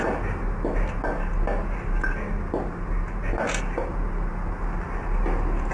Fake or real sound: real